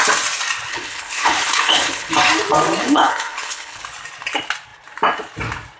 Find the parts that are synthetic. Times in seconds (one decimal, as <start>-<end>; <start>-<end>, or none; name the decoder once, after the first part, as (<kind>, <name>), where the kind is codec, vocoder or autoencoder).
0.7-2.1 (codec, HILCodec); 2.8-3.8